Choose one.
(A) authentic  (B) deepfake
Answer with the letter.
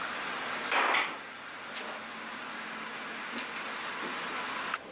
A